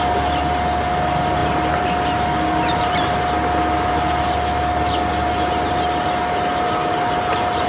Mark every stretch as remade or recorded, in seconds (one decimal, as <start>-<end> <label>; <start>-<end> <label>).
0.0-7.7 recorded